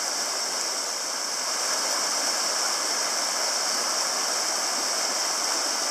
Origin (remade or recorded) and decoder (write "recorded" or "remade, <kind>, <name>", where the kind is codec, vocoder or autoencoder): recorded